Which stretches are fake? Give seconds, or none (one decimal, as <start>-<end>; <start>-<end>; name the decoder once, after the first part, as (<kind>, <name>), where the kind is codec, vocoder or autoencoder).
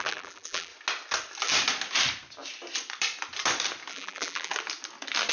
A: 0.0-0.7 (vocoder, BigVGAN v2); 3.9-4.5